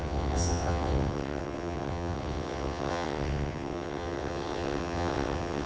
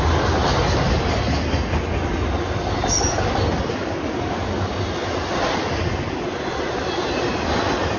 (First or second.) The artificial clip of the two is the first